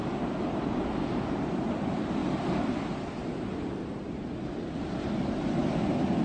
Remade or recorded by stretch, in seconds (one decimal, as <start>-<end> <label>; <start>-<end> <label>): 0.0-6.2 recorded